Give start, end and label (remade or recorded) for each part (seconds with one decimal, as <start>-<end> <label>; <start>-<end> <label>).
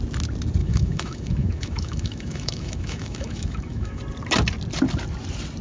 0.0-0.6 recorded; 0.6-4.0 remade; 4.0-5.6 recorded